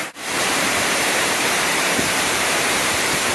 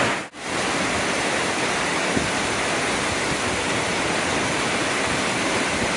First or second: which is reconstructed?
first